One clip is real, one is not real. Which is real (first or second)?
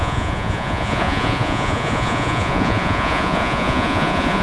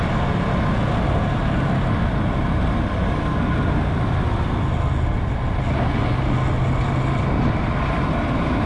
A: second